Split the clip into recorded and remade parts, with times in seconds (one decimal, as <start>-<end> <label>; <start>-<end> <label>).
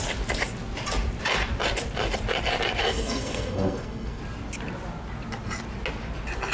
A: 0.0-2.8 recorded; 2.8-4.2 remade; 4.2-6.5 recorded